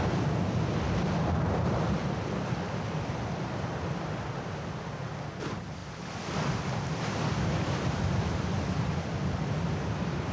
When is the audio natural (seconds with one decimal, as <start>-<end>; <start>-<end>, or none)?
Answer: 0.0-10.3